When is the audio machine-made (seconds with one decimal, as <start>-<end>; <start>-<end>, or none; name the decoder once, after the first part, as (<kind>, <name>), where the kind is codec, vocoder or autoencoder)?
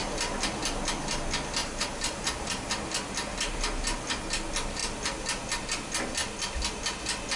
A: 1.6-2.7 (vocoder, BigVGAN v2)